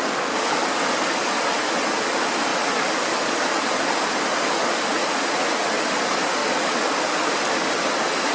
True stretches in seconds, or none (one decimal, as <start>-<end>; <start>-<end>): 0.0-4.9; 5.7-8.3